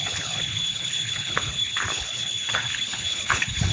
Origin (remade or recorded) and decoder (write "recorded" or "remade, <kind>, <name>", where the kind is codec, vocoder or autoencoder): remade, codec, HILCodec